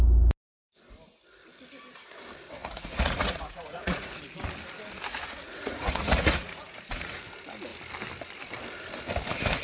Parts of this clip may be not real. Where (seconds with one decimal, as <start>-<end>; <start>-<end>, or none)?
2.6-4.2; 5.1-7.2